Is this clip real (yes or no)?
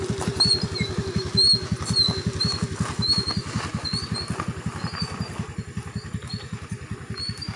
yes